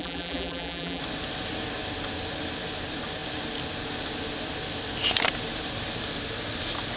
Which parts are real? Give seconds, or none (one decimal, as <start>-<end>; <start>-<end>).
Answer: 1.0-7.0